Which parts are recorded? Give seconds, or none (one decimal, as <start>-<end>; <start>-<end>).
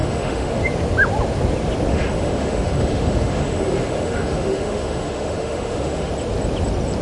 0.6-1.9; 6.1-7.0